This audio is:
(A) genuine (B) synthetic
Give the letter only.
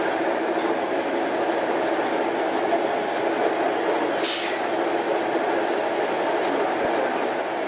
A